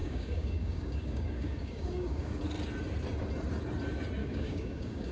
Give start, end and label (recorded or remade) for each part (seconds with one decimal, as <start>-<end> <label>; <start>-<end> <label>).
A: 0.0-2.4 remade; 2.4-4.2 recorded; 4.2-5.1 remade